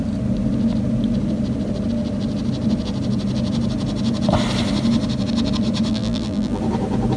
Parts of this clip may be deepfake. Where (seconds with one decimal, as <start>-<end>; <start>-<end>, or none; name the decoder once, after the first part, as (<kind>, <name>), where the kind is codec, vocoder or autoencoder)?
5.9-6.6 (vocoder, BigVGAN v2)